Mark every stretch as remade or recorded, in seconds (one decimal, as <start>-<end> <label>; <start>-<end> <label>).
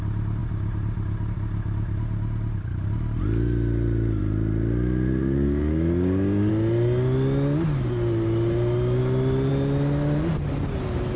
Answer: 0.0-5.2 recorded; 5.2-6.5 remade; 6.5-11.2 recorded